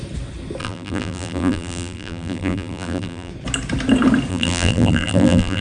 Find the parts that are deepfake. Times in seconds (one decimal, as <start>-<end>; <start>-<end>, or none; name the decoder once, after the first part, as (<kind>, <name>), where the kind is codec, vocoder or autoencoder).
0.6-3.3 (vocoder, BigVGAN v2); 4.3-5.6